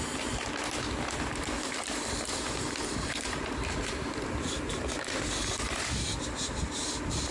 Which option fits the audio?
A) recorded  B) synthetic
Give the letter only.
A